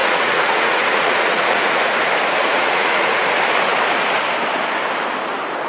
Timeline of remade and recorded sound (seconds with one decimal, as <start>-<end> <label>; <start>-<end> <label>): 0.0-1.9 remade; 1.9-2.4 recorded; 2.4-3.2 remade; 3.2-5.7 recorded